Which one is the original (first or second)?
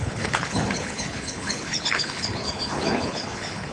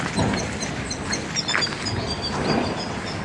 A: second